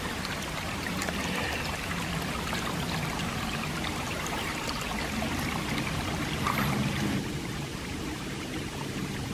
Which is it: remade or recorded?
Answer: recorded